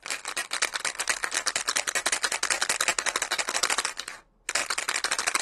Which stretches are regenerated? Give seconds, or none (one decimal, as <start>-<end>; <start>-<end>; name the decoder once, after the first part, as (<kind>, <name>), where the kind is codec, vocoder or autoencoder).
none